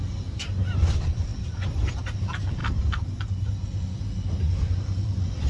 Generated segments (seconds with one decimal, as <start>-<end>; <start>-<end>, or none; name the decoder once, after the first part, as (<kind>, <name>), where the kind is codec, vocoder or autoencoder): 1.3-1.9 (vocoder, BigVGAN v2)